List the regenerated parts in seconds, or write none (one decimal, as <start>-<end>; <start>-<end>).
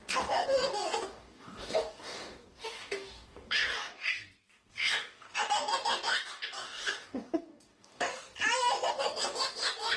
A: 0.0-8.3; 8.9-10.0